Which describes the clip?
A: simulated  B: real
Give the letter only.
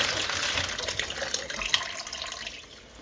A